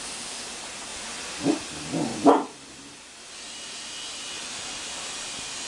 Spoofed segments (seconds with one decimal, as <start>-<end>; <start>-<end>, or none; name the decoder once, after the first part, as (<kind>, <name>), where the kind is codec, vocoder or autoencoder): 0.0-2.1 (vocoder, BigVGAN v2); 4.4-5.7